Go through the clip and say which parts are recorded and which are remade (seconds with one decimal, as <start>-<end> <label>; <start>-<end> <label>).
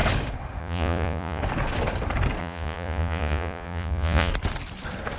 0.0-0.6 recorded; 0.6-1.4 remade; 1.4-2.4 recorded; 2.4-4.3 remade; 4.3-5.2 recorded